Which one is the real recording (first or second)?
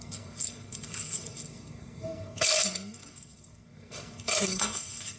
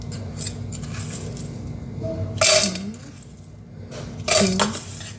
second